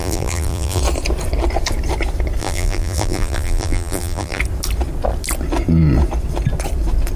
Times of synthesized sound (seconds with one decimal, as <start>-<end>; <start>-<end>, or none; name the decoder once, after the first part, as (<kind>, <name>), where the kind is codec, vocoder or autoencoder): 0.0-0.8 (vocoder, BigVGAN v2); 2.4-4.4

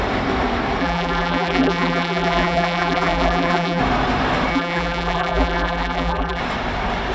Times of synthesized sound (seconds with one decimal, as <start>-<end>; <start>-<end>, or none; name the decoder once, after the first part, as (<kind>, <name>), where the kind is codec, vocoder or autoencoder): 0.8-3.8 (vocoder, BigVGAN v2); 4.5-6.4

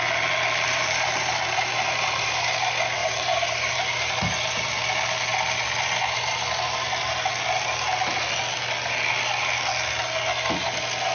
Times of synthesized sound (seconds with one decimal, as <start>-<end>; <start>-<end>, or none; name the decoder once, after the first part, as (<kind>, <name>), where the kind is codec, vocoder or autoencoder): 0.7-2.5 (vocoder, BigVGAN v2); 3.0-4.1

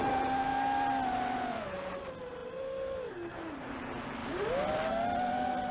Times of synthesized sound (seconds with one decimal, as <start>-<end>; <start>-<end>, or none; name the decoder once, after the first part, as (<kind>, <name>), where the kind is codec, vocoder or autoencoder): 4.2-4.9 (vocoder, BigVGAN v2)

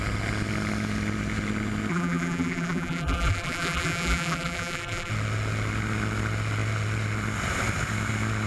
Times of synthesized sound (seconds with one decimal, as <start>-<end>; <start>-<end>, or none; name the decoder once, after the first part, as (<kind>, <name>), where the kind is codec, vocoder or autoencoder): 1.9-5.1 (vocoder, BigVGAN v2)

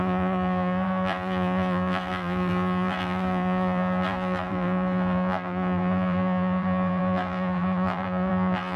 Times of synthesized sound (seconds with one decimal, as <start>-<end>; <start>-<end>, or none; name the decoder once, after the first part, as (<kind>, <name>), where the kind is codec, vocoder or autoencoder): 0.0-8.8 (vocoder, BigVGAN v2)